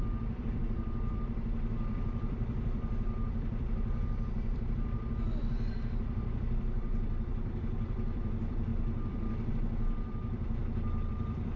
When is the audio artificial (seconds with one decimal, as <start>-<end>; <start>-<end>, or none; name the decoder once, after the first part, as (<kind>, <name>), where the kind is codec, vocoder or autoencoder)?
0.0-10.6 (vocoder, BigVGAN v2); 11.1-11.6